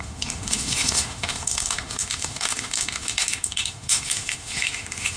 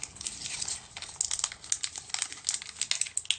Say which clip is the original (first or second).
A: second